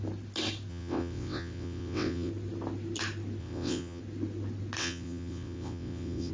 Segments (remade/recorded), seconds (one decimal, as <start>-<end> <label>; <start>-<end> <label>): 0.0-0.7 recorded; 0.7-2.3 remade; 2.3-3.4 recorded; 3.4-4.0 remade; 4.0-4.8 recorded; 4.8-6.3 remade